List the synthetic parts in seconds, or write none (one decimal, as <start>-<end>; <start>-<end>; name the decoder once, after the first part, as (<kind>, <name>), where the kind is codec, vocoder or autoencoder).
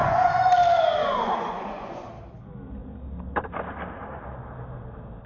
0.0-0.5 (vocoder, Vocos); 1.0-2.1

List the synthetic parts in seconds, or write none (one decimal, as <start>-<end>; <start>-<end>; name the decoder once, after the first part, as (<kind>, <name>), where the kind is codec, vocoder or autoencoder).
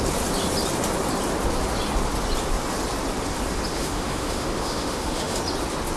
3.7-5.4 (autoencoder, DAC-VAE)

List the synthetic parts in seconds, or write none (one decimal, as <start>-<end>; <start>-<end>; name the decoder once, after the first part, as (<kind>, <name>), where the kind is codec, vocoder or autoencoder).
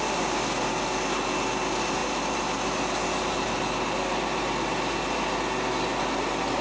none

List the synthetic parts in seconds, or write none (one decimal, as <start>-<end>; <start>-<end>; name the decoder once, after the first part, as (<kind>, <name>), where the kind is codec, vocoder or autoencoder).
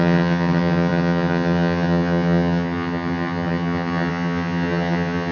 0.0-5.3 (vocoder, HiFi-GAN)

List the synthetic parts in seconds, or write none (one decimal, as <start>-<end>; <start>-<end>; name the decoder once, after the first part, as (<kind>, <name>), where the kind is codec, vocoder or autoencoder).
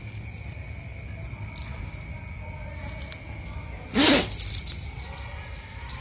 none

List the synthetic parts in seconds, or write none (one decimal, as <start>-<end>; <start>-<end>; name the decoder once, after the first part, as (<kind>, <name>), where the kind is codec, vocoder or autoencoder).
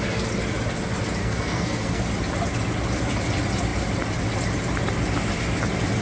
1.2-2.0 (codec, SNAC)